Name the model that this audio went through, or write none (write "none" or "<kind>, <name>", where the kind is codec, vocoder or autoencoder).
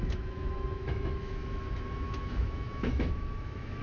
autoencoder, DAC-VAE